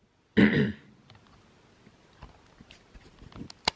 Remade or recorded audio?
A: recorded